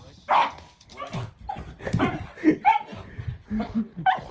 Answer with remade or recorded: recorded